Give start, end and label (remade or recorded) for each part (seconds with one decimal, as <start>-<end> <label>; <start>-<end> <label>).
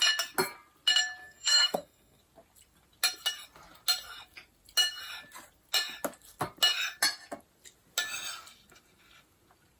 0.0-1.2 recorded; 1.2-2.2 remade; 2.2-9.8 recorded